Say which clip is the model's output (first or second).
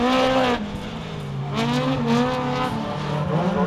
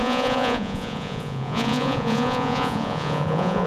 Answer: second